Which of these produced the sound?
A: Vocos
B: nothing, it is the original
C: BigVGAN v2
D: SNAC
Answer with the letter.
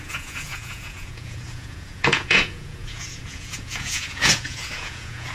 A